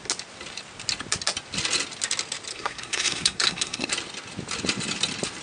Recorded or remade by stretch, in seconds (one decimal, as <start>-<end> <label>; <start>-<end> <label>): 0.0-2.5 recorded; 2.5-3.9 remade; 3.9-5.4 recorded